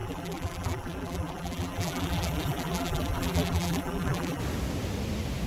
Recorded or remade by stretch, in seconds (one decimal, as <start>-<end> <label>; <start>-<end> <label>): 0.0-4.4 remade; 4.4-5.5 recorded